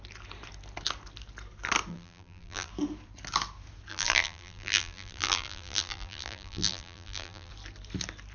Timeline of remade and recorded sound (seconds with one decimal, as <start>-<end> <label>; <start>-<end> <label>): 0.0-1.9 recorded; 1.9-2.7 remade; 2.7-3.9 recorded; 3.9-7.5 remade; 7.5-8.3 recorded